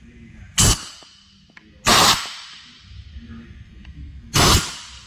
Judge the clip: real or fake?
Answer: real